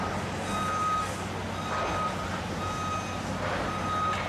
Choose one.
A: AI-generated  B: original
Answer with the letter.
B